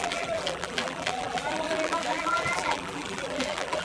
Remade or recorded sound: remade